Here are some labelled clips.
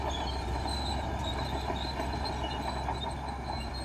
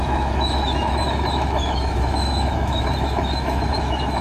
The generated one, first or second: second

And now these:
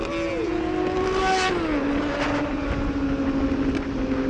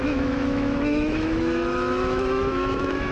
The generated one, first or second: second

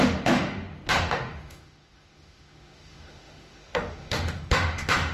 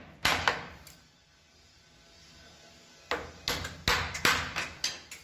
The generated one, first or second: first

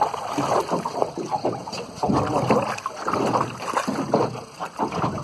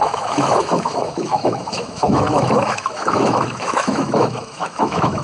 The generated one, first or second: second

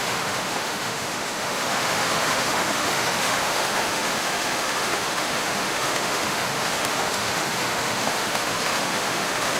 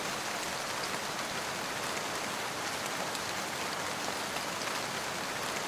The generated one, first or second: first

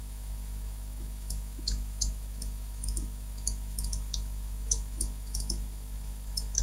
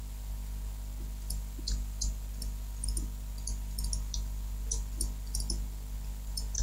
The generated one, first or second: first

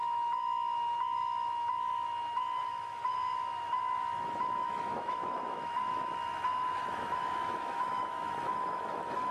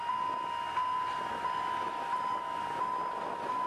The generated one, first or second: first